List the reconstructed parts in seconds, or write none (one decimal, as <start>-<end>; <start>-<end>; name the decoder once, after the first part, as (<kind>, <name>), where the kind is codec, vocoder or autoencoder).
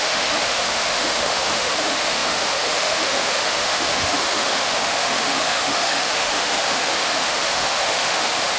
0.0-8.6 (autoencoder, DAC-VAE)